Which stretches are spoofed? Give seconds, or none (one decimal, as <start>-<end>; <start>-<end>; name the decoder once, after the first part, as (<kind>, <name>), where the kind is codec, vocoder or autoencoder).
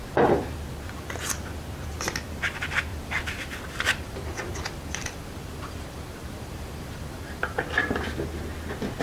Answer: 2.9-7.6 (vocoder, BigVGAN v2)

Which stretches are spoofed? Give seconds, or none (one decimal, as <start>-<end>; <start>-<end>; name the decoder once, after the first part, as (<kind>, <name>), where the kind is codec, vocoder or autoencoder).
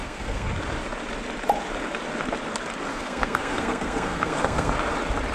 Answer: 0.0-0.5 (codec, SNAC); 2.9-4.7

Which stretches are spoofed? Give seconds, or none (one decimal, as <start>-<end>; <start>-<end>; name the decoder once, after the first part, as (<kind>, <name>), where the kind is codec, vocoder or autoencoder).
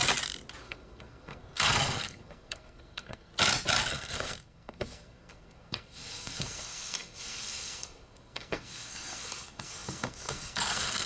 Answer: 0.6-3.3 (codec, SNAC); 3.9-11.1